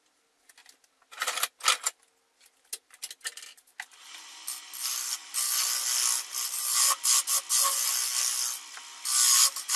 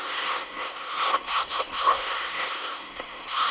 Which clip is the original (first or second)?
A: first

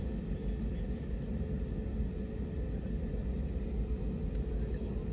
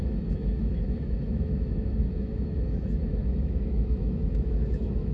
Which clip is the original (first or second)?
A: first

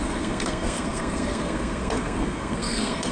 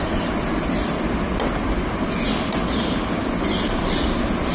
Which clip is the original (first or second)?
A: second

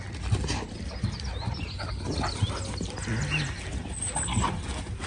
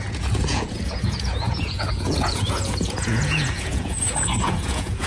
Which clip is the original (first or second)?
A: first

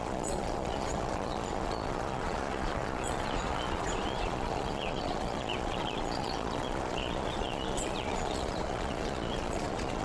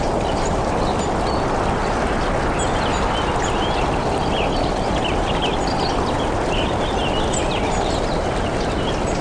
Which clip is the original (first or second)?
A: second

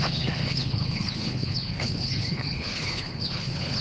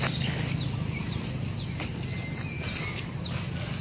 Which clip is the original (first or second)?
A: second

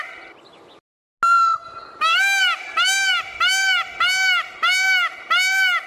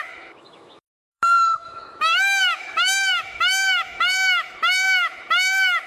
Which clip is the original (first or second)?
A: first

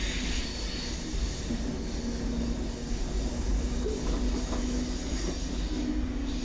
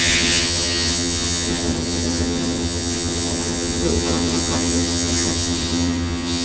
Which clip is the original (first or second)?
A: first